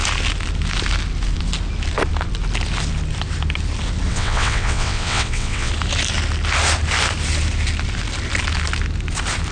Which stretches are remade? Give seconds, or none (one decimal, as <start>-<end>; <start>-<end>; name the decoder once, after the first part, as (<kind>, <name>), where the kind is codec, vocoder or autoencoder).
4.1-5.7 (vocoder, WaveNeXt)